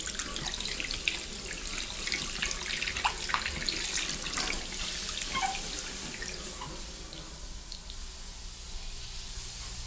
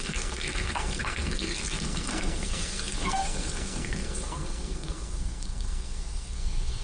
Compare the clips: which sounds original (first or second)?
first